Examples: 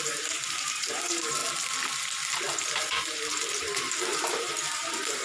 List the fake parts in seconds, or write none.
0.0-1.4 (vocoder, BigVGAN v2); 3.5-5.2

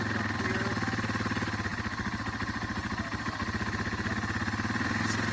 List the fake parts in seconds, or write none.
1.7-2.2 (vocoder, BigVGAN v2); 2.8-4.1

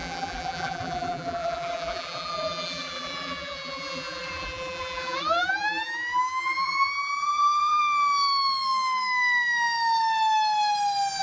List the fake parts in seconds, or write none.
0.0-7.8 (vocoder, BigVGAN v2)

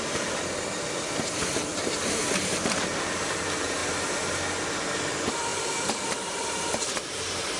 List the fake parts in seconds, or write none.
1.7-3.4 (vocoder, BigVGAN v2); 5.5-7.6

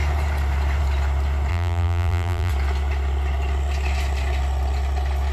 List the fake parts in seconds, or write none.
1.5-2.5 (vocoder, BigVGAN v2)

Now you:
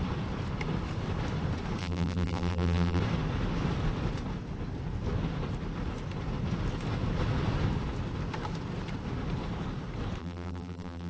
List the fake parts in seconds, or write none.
1.8-3.0 (vocoder, BigVGAN v2); 10.2-11.1

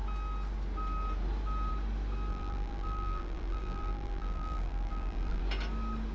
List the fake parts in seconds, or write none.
2.3-5.4 (vocoder, BigVGAN v2)